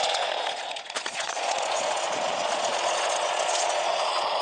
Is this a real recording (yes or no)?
no